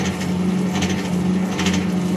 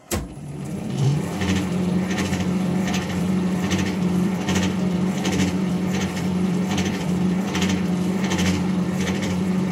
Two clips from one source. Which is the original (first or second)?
first